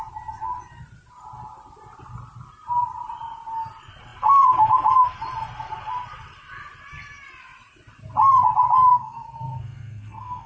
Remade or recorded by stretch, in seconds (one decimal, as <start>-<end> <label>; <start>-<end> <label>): 0.0-8.9 recorded; 8.9-10.5 remade